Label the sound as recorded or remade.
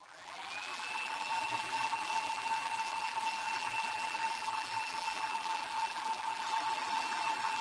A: remade